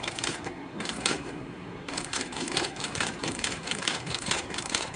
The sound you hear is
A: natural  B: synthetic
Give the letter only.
B